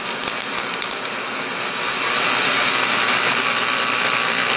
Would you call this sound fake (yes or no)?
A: no